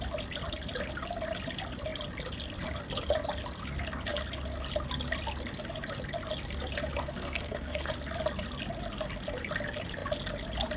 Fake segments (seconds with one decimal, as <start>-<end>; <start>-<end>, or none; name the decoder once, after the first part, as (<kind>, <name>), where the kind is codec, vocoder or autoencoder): 7.0-7.9 (codec, SNAC)